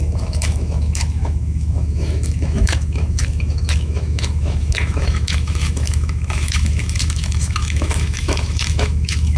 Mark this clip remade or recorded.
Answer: remade